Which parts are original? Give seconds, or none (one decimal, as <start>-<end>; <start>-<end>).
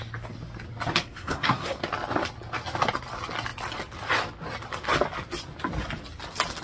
0.0-1.0; 1.8-6.6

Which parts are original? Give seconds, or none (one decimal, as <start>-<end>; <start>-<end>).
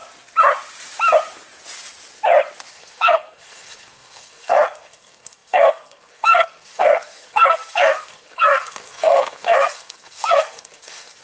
0.0-2.7